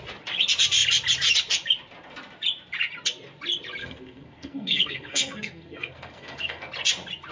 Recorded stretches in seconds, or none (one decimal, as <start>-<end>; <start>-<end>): 0.0-3.8; 6.7-7.3